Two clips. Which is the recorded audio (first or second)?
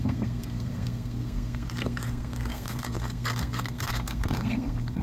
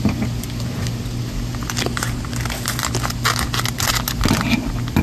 second